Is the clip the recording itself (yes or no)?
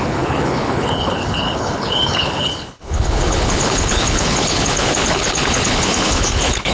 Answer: no